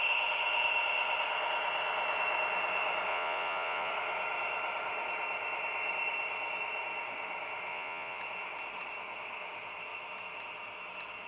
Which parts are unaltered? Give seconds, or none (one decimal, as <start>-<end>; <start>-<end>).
0.0-3.1; 3.9-7.7; 8.2-11.3